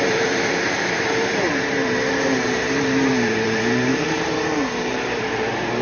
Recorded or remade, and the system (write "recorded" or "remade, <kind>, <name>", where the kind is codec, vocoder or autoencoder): remade, vocoder, BigVGAN v2